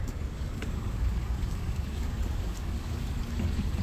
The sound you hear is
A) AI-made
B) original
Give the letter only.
A